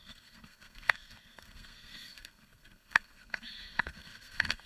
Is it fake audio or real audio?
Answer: fake